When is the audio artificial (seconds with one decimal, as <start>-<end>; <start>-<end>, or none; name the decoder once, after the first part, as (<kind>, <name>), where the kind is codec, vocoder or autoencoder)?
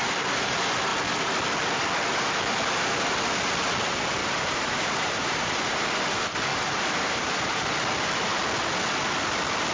4.2-5.8 (vocoder, BigVGAN v2); 6.5-7.6